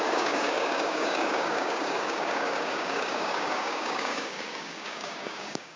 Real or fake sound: fake